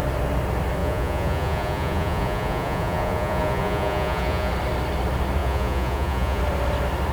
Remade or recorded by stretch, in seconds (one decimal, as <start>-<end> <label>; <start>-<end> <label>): 0.0-0.8 recorded; 0.8-4.5 remade; 4.5-5.4 recorded; 5.4-6.4 remade; 6.4-7.1 recorded